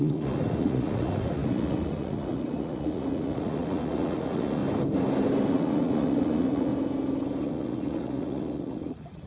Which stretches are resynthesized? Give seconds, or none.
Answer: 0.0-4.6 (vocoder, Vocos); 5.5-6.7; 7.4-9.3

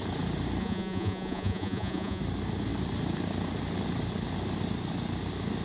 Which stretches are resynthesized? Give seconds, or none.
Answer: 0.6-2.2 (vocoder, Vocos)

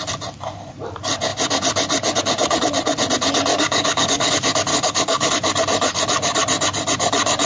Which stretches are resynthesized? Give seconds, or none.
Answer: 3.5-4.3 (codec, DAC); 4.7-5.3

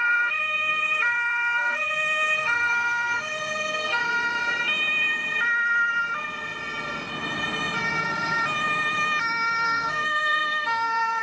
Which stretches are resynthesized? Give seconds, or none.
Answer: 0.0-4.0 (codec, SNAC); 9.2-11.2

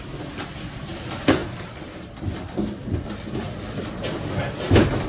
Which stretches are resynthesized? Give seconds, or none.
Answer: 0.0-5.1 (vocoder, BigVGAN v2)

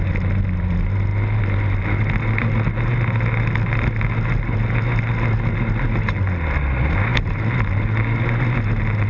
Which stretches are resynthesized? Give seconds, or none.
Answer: none